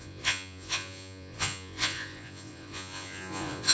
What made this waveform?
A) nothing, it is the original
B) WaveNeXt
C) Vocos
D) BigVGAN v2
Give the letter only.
C